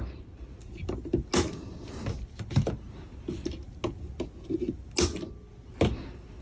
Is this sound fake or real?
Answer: real